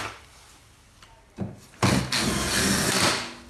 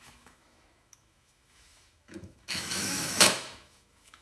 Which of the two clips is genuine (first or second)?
first